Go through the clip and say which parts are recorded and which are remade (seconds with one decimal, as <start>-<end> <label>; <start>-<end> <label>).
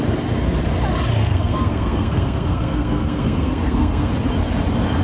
0.0-1.2 recorded; 1.2-4.1 remade; 4.1-5.0 recorded